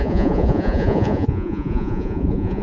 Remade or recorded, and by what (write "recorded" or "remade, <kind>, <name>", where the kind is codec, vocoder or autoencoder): remade, vocoder, Vocos